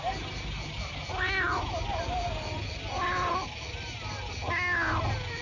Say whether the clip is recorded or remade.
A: recorded